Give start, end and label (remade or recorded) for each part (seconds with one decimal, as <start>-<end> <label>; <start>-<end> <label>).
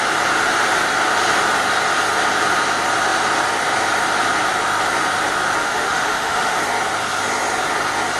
0.0-5.6 recorded; 5.6-6.6 remade; 6.6-8.2 recorded